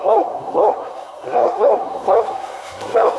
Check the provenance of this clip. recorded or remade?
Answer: remade